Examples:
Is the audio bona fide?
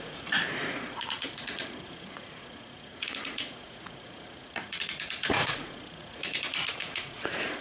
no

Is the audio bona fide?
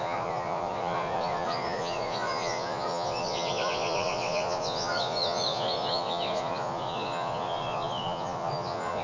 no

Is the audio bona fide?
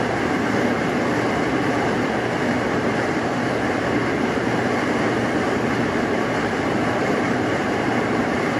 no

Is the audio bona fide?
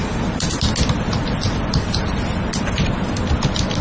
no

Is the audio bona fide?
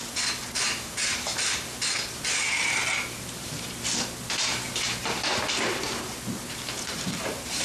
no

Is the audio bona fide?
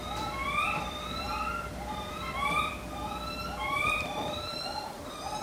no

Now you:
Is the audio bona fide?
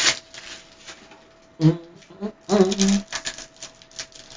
yes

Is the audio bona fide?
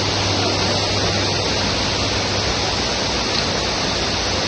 yes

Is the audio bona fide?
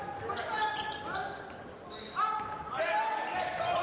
yes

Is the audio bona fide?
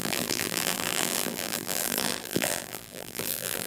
no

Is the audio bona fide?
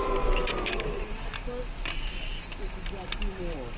yes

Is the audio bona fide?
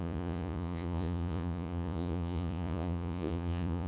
no